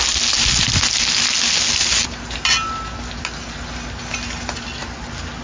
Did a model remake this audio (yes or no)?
no